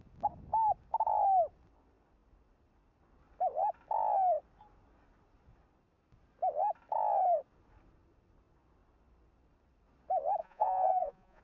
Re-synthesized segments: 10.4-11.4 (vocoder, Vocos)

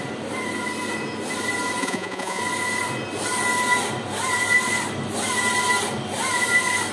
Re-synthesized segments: 1.8-2.4 (vocoder, Vocos)

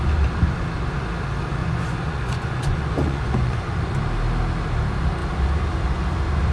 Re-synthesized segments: 1.6-3.8 (vocoder, Vocos)

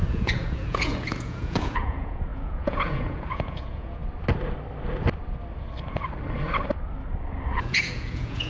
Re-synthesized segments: 0.0-4.0 (vocoder, Vocos); 7.5-8.5